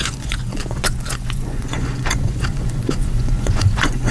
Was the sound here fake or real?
fake